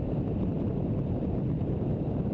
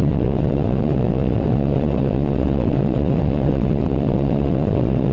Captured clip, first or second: first